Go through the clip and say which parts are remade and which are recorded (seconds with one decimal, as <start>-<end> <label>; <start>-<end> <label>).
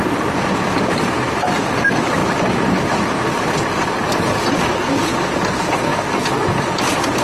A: 0.0-7.2 recorded